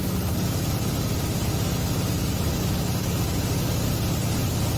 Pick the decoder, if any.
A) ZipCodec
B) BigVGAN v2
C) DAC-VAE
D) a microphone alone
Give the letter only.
D